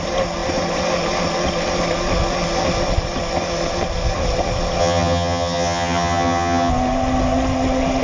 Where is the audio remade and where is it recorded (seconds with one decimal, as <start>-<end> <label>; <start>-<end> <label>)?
0.0-4.8 recorded; 4.8-6.7 remade; 6.7-8.0 recorded